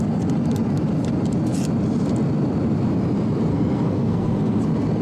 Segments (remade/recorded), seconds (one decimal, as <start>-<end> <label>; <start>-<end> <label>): 0.0-3.5 recorded; 3.5-4.6 remade; 4.6-5.0 recorded